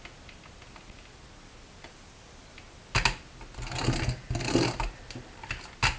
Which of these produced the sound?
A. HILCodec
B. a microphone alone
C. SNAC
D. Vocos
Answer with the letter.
B